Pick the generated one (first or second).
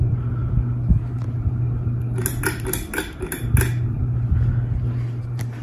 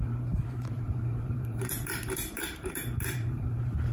second